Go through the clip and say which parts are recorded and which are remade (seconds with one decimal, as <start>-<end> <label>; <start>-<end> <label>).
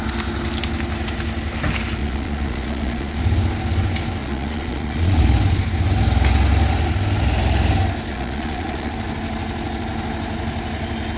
0.0-2.0 recorded; 2.0-3.2 remade; 3.2-4.2 recorded; 4.2-5.2 remade; 5.2-8.1 recorded; 8.1-8.9 remade; 8.9-11.2 recorded